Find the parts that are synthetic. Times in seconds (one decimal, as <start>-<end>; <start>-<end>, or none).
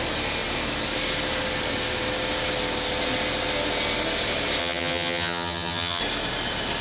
4.6-6.0